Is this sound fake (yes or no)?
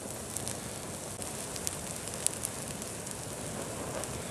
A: no